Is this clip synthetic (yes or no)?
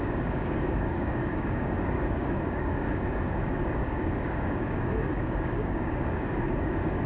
yes